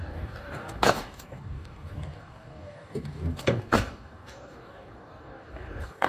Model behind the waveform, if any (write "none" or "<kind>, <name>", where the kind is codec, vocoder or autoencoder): codec, DAC